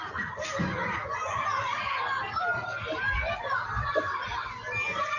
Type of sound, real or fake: real